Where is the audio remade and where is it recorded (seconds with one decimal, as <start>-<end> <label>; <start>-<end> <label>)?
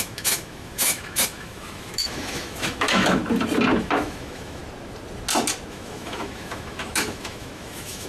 0.0-3.2 remade; 3.2-3.8 recorded; 3.8-4.6 remade; 4.6-5.7 recorded; 5.7-8.1 remade